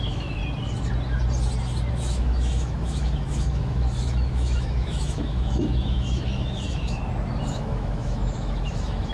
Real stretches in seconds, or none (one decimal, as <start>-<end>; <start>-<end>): 0.4-1.9; 7.0-7.5